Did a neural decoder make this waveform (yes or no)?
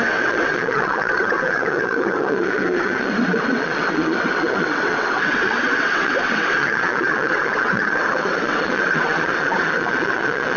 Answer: yes